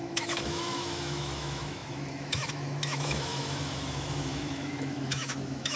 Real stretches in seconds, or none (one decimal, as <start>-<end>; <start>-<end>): none

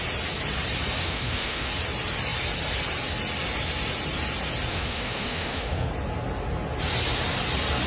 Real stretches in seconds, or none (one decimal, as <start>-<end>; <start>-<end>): 0.0-1.0; 1.7-4.7; 5.9-7.9

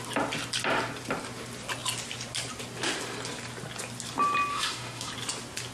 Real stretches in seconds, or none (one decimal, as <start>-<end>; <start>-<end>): 0.0-4.5; 5.1-5.7

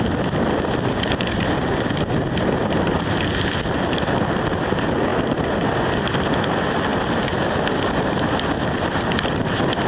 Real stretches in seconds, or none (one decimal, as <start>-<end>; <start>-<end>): 0.0-9.9